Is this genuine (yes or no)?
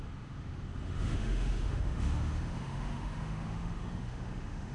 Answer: no